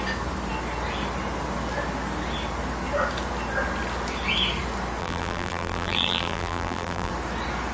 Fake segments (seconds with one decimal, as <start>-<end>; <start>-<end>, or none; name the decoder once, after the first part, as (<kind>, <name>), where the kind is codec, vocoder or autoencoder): 5.0-7.1 (vocoder, BigVGAN v2)